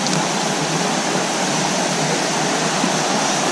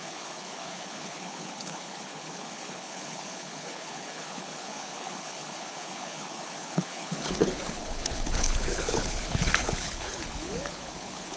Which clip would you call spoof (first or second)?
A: second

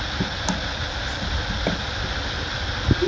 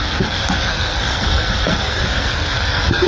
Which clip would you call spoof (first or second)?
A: second